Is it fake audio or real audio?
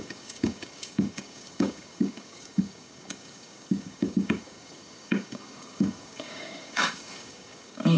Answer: fake